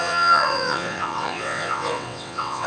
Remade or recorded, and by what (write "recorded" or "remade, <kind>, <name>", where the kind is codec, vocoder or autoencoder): remade, vocoder, WaveNeXt